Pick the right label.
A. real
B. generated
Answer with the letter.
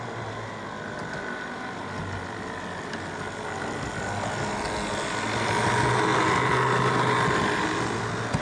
A